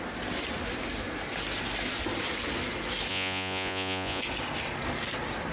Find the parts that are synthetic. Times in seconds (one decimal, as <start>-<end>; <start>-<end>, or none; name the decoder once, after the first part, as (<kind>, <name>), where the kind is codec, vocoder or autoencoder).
3.1-4.2 (vocoder, Vocos)